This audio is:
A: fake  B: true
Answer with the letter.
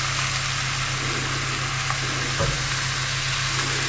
B